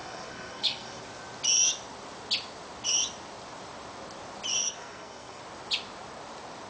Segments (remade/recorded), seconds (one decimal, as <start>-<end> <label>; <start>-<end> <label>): 0.0-1.0 remade; 1.0-4.6 recorded; 4.6-5.4 remade; 5.4-6.7 recorded

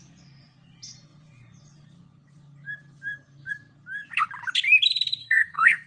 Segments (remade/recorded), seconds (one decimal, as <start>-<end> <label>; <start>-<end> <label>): 0.0-5.2 recorded; 5.2-5.9 remade

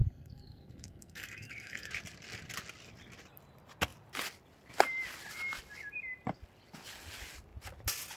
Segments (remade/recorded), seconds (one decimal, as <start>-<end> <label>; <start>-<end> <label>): 0.0-1.9 remade; 1.9-8.2 recorded